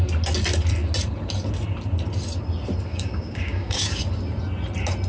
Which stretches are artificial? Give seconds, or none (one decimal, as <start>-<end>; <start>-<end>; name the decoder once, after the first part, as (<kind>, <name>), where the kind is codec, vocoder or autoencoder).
2.9-4.0 (codec, DAC)